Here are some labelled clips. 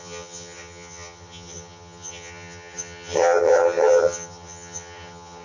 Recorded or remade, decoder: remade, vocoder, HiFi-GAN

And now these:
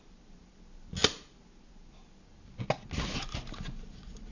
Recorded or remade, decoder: recorded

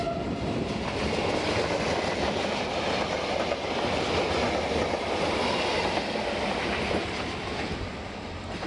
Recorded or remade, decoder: recorded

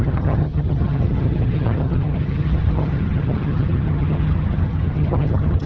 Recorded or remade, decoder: remade, vocoder, HiFi-GAN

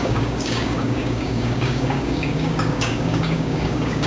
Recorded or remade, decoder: remade, codec, DAC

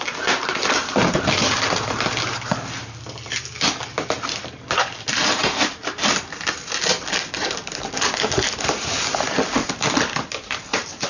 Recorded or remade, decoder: recorded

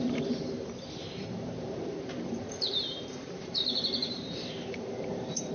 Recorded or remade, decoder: remade, vocoder, BigVGAN v2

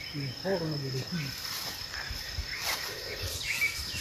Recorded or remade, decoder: recorded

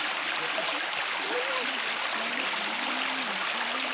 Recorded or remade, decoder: recorded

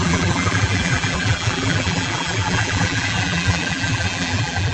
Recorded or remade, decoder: remade, vocoder, BigVGAN v2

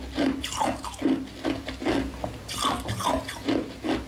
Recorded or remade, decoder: recorded